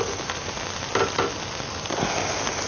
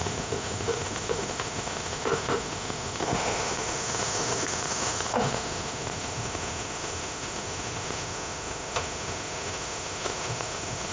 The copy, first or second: second